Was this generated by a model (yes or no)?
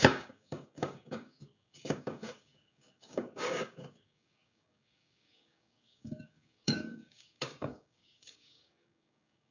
yes